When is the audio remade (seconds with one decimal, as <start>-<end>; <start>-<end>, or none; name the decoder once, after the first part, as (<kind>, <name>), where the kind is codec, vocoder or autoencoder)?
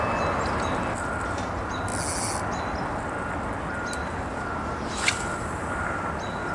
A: none